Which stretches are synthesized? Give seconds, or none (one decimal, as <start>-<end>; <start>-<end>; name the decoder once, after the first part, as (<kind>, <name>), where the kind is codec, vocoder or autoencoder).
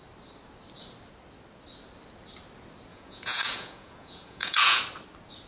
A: 2.9-4.8 (vocoder, Vocos)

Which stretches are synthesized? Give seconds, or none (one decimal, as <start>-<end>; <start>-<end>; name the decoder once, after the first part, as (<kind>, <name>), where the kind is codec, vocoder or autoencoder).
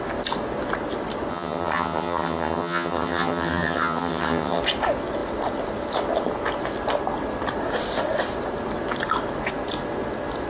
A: 1.3-4.6 (vocoder, HiFi-GAN)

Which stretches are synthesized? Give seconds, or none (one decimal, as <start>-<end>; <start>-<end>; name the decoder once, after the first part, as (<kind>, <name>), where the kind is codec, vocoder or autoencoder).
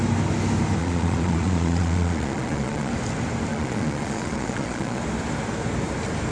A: 0.8-2.9 (vocoder, Vocos); 3.5-5.0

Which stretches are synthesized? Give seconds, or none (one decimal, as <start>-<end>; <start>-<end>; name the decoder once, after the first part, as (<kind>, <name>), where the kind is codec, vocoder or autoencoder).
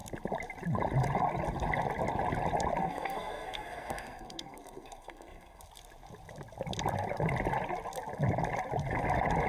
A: 2.8-5.6 (codec, SNAC)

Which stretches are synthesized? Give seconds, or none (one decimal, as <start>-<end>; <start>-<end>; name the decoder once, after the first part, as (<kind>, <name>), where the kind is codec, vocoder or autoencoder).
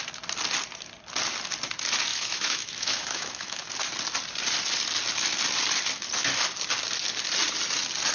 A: 2.1-3.7 (autoencoder, DAC-VAE)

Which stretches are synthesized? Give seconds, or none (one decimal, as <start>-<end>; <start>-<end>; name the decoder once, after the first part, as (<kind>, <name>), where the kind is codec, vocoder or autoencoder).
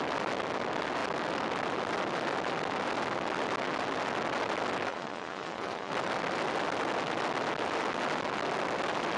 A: 4.9-5.9 (vocoder, Vocos)